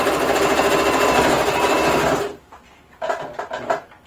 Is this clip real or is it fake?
real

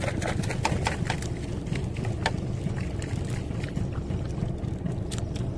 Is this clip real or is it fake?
real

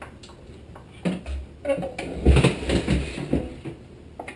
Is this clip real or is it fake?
real